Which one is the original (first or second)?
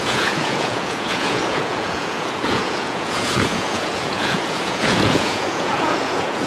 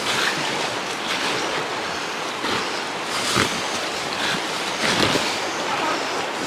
second